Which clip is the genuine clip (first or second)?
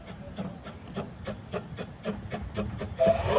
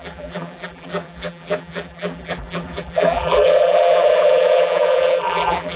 first